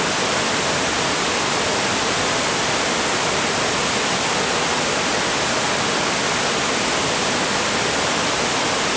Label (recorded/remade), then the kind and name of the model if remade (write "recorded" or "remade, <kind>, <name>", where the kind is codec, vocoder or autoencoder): recorded